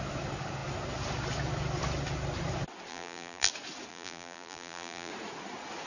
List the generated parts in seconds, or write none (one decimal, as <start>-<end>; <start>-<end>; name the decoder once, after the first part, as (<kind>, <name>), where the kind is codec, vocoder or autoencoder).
2.9-3.5 (vocoder, BigVGAN v2); 3.9-5.1